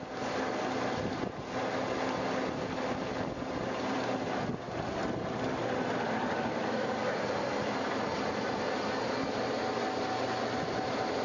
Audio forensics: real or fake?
real